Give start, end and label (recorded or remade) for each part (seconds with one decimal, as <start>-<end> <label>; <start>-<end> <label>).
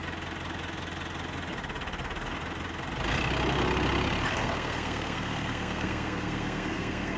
0.0-4.3 recorded; 4.3-7.2 remade